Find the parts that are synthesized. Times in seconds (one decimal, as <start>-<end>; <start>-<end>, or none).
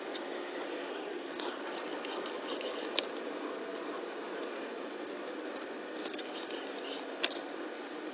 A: 0.9-1.6